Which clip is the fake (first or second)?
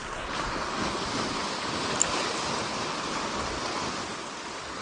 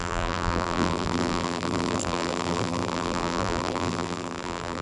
second